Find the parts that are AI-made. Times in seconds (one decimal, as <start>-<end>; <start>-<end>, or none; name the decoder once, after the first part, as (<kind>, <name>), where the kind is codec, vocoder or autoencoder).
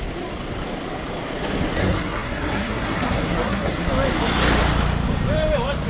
1.8-3.9 (codec, SNAC)